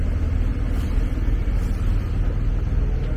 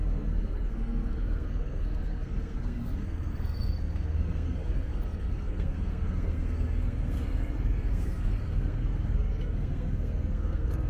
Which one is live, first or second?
first